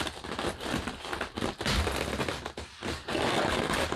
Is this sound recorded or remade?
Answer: recorded